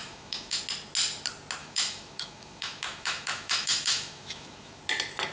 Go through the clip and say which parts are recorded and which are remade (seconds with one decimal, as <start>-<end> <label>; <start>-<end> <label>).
0.0-0.6 remade; 0.6-1.6 recorded; 1.6-4.8 remade; 4.8-5.3 recorded